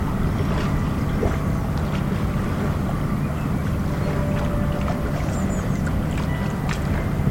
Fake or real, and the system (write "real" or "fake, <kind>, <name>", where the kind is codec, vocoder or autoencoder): real